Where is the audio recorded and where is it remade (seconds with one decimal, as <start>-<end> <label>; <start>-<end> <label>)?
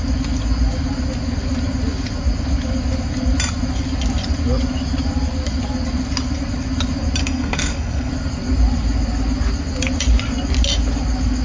0.0-7.2 recorded; 7.2-8.1 remade; 8.1-11.4 recorded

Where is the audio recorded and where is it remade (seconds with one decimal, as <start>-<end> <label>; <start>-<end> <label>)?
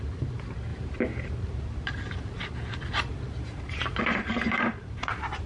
0.0-5.5 remade